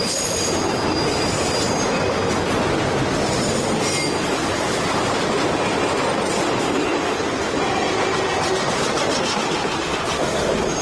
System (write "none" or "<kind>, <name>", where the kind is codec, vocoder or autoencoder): none